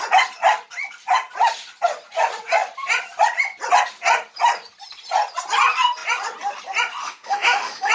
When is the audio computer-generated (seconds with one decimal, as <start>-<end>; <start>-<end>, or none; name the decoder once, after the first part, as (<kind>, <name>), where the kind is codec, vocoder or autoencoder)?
7.0-7.9 (autoencoder, DAC-VAE)